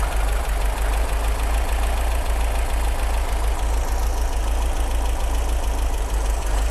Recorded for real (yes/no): yes